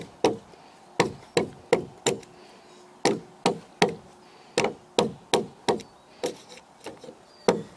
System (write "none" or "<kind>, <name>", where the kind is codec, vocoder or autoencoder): none